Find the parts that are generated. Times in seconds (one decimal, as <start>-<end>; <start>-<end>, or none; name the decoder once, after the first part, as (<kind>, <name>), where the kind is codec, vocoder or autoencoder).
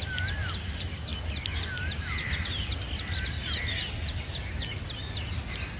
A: none